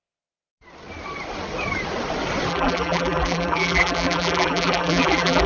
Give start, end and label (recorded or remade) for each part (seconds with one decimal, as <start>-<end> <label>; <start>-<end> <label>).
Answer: 0.0-0.5 remade; 0.5-2.5 recorded; 2.5-5.5 remade